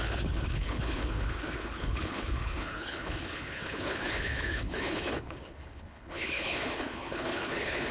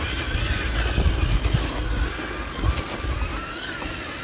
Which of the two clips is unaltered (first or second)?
second